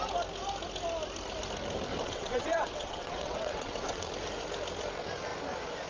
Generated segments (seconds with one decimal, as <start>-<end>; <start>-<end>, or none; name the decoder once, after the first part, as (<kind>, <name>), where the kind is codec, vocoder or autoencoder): 1.9-4.1 (vocoder, WaveNeXt)